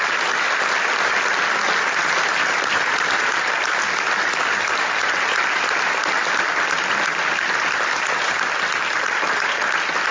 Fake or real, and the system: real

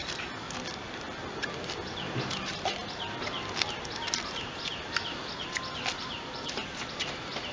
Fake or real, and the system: real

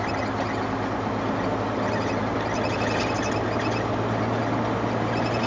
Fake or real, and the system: real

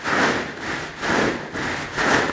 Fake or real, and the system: real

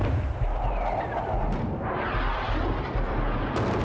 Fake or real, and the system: fake, vocoder, BigVGAN v2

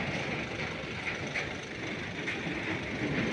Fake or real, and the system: real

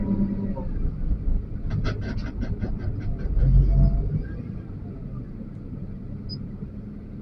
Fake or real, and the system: real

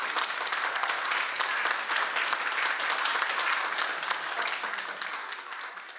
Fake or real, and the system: real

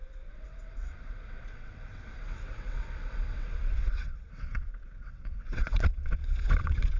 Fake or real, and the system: fake, vocoder, WaveNeXt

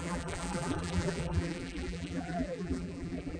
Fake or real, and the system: fake, vocoder, BigVGAN v2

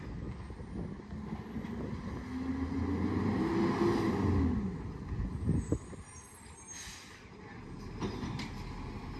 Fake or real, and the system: real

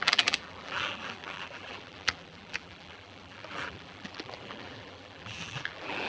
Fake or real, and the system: fake, vocoder, BigVGAN v2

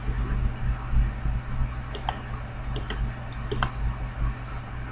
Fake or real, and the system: real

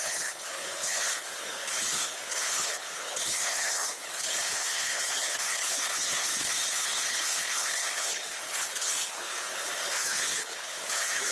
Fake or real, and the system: fake, codec, HILCodec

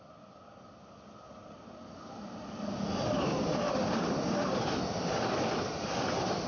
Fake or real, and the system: real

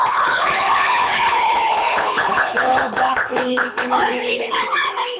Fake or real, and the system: fake, codec, HILCodec